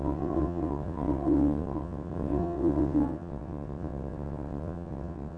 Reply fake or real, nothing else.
fake